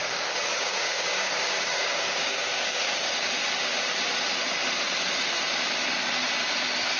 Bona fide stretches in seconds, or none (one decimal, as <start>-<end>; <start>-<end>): 3.3-7.0